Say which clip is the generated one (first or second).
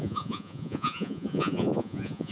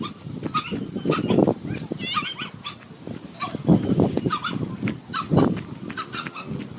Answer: first